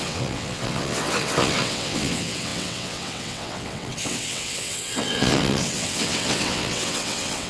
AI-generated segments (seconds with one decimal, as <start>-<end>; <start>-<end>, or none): 0.0-7.5